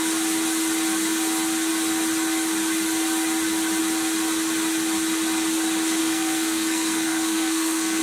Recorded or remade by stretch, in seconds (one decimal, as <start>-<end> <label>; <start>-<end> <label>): 0.0-6.0 recorded; 6.0-8.0 remade